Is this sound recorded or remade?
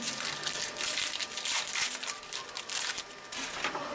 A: recorded